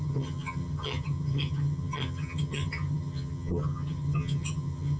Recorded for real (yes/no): no